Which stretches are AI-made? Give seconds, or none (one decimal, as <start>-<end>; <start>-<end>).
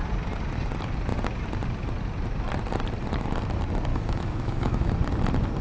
3.9-4.9